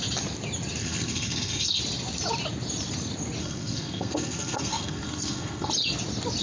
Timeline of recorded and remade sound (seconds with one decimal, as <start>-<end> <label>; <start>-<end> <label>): 0.0-0.8 recorded; 0.8-1.8 remade; 1.8-3.4 recorded; 3.4-5.7 remade; 5.7-6.4 recorded